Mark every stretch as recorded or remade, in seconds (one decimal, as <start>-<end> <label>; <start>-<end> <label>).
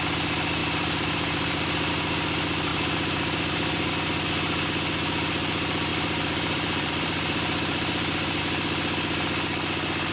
0.0-0.6 recorded; 0.6-1.9 remade; 1.9-2.7 recorded; 2.7-3.9 remade; 3.9-5.9 recorded; 5.9-8.4 remade; 8.4-10.1 recorded